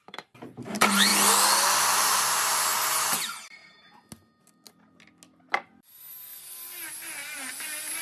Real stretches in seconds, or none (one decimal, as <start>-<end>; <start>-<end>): 1.1-1.8; 2.7-3.2; 3.6-8.0